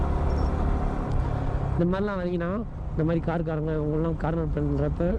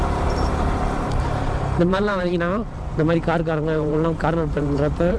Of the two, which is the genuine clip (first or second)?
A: first